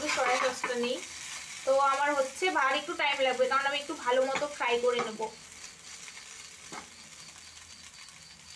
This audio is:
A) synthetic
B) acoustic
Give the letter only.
B